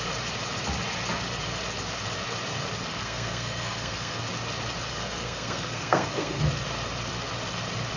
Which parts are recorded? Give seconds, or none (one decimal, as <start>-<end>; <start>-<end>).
0.0-2.9; 4.2-4.9; 6.4-8.0